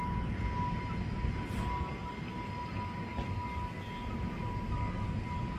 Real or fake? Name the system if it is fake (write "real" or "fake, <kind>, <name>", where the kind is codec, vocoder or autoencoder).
real